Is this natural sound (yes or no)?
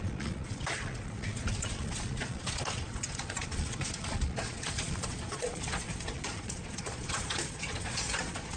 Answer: no